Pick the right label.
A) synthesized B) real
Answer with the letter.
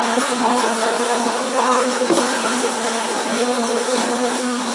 A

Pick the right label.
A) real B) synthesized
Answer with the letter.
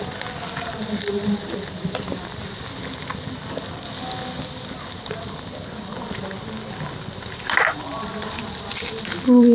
A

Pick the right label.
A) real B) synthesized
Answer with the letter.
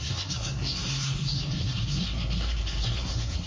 B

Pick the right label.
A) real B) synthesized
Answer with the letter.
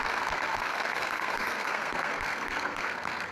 B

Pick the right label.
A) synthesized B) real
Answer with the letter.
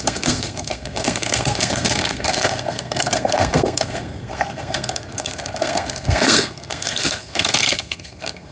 A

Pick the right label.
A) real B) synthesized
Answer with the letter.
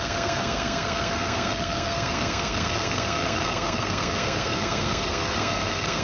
B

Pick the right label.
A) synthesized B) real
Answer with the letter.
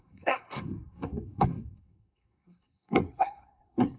A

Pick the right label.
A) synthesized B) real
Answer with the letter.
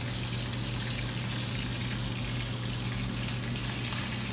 B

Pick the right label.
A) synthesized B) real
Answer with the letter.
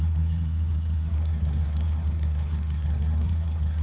A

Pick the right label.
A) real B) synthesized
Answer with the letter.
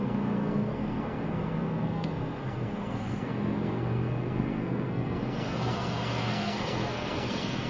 B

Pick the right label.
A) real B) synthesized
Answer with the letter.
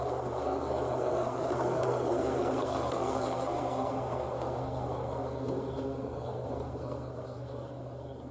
B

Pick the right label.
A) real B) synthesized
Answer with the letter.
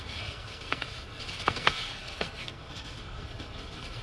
B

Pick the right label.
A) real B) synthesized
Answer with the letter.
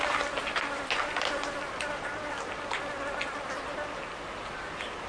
A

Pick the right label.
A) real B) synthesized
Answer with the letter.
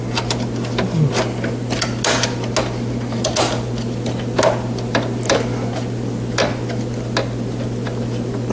A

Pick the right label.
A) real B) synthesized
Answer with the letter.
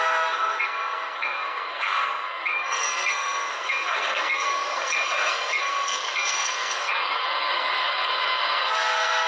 B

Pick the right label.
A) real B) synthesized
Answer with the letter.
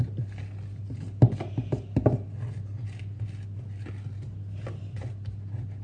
A